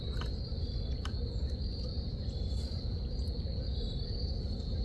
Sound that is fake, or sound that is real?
real